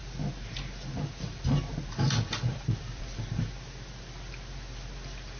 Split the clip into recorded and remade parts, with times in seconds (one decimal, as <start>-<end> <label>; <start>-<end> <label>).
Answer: 0.0-5.4 recorded